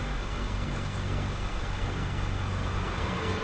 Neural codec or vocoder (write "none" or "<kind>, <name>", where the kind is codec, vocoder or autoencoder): codec, SNAC